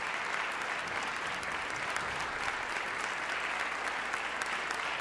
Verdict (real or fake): real